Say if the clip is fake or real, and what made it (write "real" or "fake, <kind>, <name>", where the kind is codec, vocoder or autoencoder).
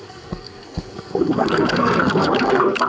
fake, codec, SNAC